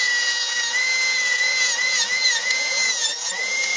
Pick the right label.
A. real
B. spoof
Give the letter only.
B